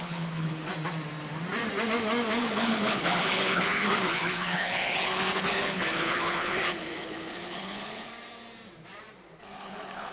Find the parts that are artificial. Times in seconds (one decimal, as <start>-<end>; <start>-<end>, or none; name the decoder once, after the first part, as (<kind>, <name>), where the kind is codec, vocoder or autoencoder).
0.0-0.7 (codec, HILCodec); 2.4-8.1; 9.4-10.1